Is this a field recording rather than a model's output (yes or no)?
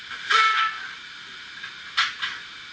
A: yes